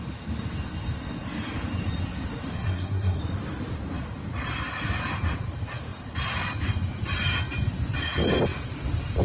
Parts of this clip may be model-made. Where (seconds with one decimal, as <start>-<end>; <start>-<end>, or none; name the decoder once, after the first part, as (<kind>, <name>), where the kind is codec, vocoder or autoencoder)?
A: 2.5-3.2 (codec, SNAC)